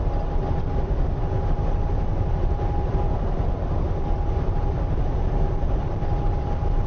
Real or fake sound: real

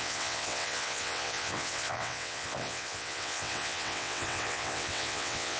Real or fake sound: fake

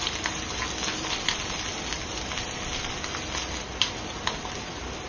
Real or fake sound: real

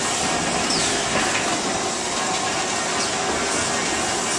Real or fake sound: real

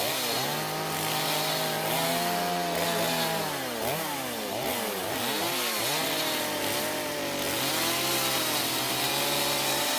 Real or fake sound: real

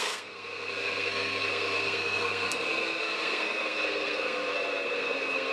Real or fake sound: fake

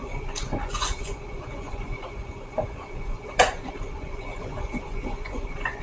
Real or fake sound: fake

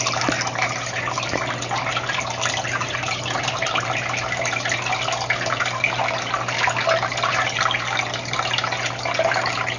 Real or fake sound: real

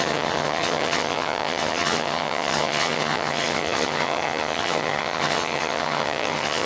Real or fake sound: fake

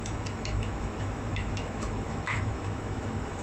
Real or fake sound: fake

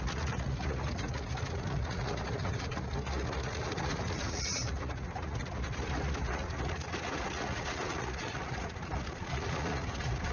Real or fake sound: fake